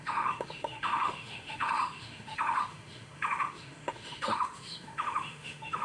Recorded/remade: remade